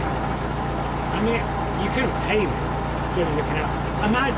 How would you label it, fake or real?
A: real